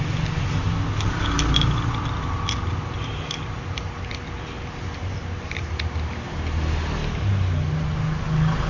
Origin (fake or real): real